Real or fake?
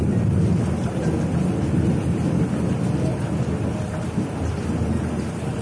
real